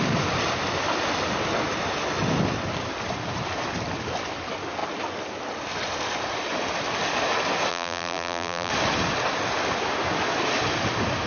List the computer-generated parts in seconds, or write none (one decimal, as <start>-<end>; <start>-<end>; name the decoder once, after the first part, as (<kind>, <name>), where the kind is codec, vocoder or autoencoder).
7.7-8.7 (vocoder, BigVGAN v2)